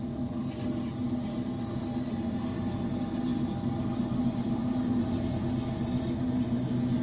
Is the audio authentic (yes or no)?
yes